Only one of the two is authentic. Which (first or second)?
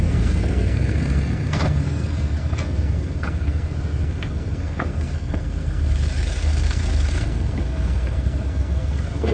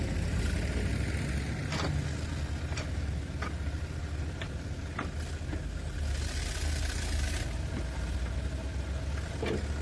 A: second